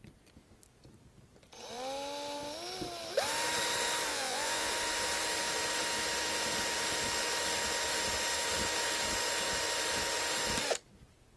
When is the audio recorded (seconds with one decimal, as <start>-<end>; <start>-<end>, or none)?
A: 0.0-4.1; 4.7-11.4